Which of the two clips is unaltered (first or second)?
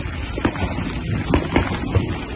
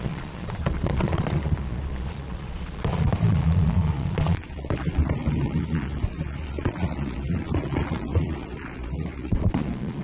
first